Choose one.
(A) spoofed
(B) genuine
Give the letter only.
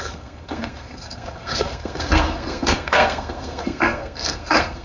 A